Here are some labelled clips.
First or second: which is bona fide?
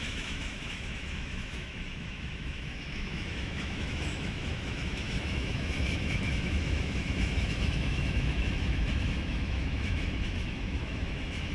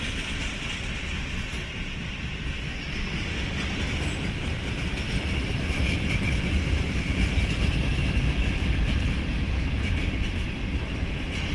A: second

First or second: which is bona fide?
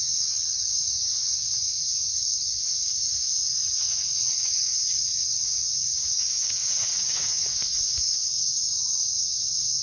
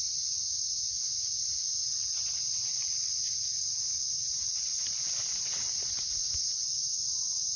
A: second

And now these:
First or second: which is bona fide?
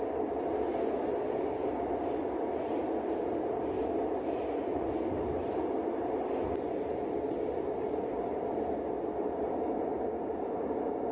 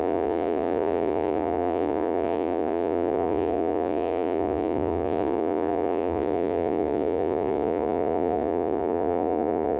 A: first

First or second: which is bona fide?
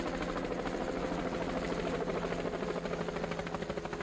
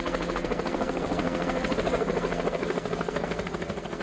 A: first